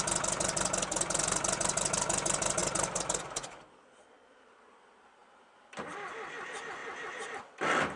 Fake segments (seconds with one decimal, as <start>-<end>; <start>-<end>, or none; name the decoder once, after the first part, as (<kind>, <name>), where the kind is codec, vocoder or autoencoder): 6.8-7.4 (vocoder, BigVGAN v2)

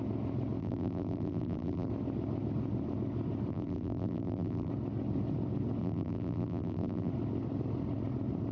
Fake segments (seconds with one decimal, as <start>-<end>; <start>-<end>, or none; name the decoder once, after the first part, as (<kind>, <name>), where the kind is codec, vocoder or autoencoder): 0.6-1.9 (vocoder, BigVGAN v2); 3.5-4.7; 5.8-7.1

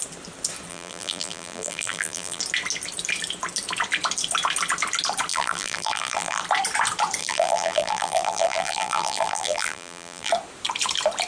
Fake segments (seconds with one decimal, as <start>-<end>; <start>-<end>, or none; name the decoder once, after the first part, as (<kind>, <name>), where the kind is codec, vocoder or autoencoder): 0.7-2.4 (vocoder, BigVGAN v2); 5.3-6.4; 7.2-10.3

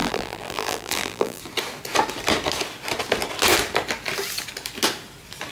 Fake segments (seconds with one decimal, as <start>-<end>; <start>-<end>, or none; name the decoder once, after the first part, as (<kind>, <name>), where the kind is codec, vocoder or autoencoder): 0.0-1.4 (vocoder, BigVGAN v2)

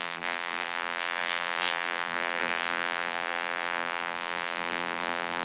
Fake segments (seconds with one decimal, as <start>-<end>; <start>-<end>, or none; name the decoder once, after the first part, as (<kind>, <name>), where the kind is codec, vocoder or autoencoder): 0.0-5.4 (vocoder, BigVGAN v2)

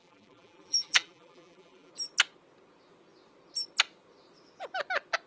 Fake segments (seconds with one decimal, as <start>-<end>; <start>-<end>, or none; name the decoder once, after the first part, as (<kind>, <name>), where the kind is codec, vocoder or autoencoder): 0.0-1.9 (vocoder, BigVGAN v2)

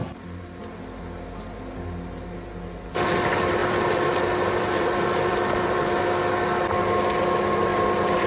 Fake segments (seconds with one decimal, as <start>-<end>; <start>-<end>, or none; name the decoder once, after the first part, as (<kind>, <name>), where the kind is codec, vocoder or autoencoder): 0.0-0.6 (vocoder, BigVGAN v2); 3.6-6.0